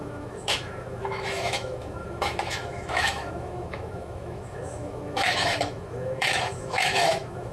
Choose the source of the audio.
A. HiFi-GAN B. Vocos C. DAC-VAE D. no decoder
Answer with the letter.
C